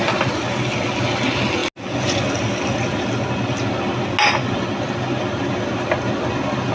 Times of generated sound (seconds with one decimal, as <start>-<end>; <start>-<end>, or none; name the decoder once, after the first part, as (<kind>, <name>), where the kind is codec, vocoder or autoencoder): none